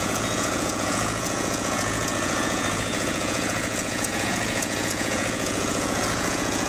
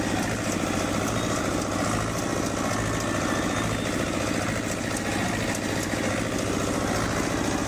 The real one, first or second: second